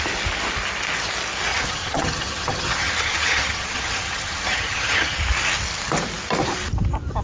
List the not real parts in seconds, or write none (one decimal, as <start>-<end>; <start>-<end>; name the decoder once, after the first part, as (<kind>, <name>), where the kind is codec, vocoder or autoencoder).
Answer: 1.5-5.2 (vocoder, HiFi-GAN)